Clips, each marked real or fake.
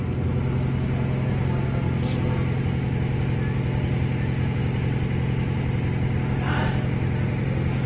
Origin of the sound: real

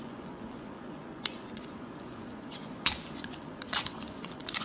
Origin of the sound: fake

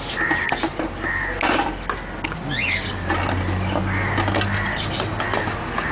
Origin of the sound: real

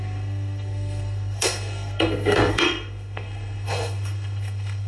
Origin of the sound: fake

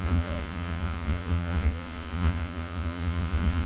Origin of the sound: fake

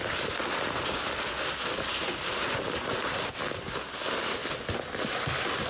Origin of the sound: real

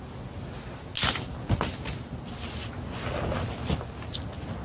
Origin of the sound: real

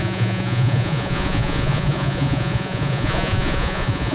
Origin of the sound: fake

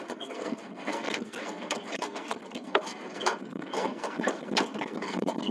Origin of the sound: fake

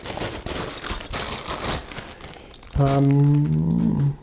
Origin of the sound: real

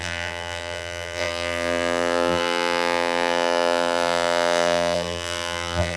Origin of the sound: fake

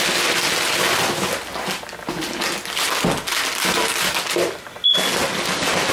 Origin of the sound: real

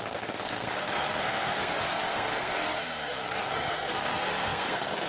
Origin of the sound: fake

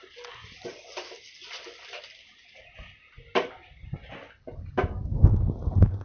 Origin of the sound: real